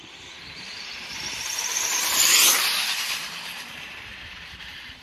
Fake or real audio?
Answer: fake